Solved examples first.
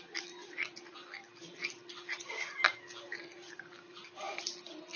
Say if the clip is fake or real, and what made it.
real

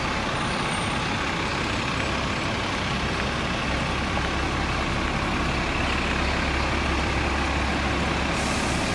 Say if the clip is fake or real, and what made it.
real